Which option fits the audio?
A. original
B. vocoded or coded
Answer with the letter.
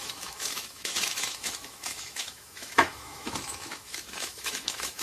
B